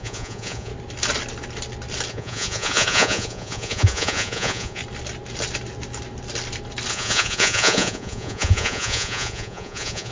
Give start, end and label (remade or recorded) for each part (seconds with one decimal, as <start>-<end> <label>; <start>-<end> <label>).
0.0-0.7 remade; 0.7-2.1 recorded; 2.1-4.8 remade; 4.8-6.9 recorded; 6.9-10.1 remade